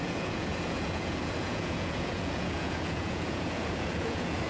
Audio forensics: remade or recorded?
remade